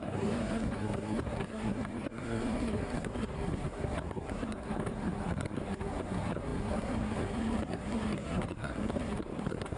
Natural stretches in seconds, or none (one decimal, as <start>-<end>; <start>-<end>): none